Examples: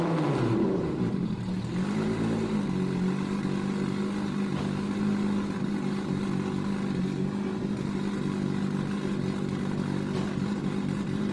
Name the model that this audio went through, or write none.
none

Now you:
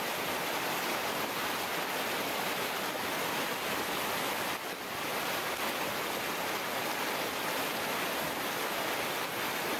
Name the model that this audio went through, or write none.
none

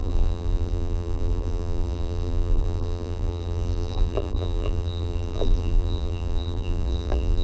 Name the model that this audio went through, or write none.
vocoder, BigVGAN v2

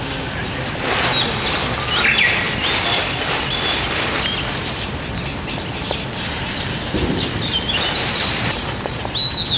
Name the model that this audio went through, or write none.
none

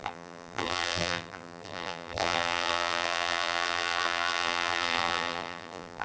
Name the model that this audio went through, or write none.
vocoder, BigVGAN v2